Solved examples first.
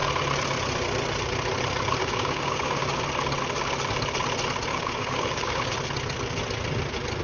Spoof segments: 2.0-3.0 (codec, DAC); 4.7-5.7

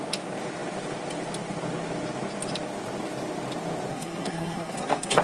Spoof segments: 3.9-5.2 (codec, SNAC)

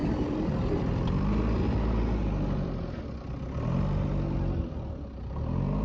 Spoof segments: 0.0-0.8 (vocoder, BigVGAN v2); 2.2-3.0

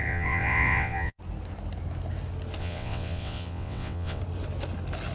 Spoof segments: 0.0-1.2 (vocoder, WaveNeXt); 2.6-4.2

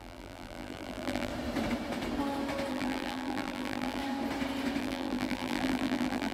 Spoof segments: 0.0-1.3 (vocoder, BigVGAN v2); 2.7-4.0; 4.8-6.3

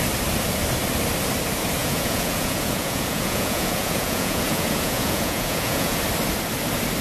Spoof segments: 1.8-6.0 (vocoder, Vocos)

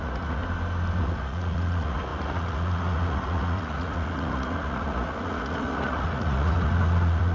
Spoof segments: 0.0-0.4 (vocoder, Vocos); 1.0-7.3

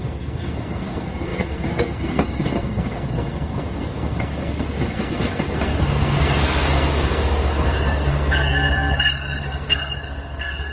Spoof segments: 0.0-10.7 (codec, SNAC)